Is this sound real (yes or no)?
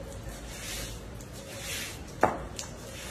yes